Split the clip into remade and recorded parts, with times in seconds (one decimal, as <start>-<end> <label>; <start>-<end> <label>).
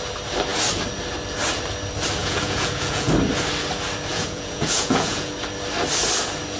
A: 0.0-2.2 recorded; 2.2-3.1 remade; 3.1-4.1 recorded; 4.1-5.3 remade; 5.3-6.6 recorded